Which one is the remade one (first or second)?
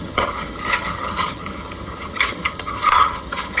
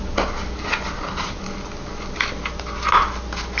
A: first